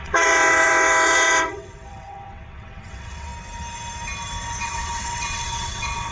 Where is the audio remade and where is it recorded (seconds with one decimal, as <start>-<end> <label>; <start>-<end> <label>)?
0.0-3.3 remade; 3.3-4.6 recorded; 4.6-6.1 remade

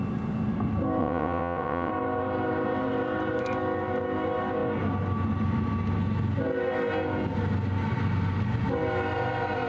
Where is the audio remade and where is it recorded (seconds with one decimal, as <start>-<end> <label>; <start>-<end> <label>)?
0.0-1.0 recorded; 1.0-1.9 remade; 1.9-9.7 recorded

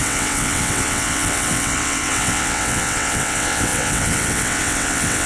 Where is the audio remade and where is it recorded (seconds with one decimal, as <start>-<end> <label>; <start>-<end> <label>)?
0.0-5.3 remade

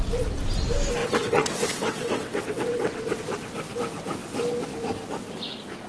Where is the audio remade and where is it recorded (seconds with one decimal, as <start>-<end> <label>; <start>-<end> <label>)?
0.0-1.0 recorded; 1.0-3.2 remade; 3.2-5.9 recorded

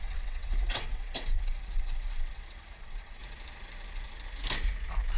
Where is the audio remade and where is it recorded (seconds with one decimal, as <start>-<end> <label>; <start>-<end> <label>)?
0.0-3.2 remade; 3.2-5.2 recorded

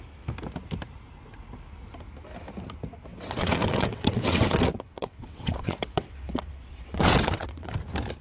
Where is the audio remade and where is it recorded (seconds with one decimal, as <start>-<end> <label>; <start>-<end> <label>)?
0.0-3.1 recorded; 3.1-7.7 remade; 7.7-8.2 recorded